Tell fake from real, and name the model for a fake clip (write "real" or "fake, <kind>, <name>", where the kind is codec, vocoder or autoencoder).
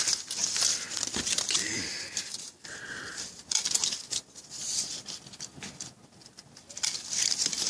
real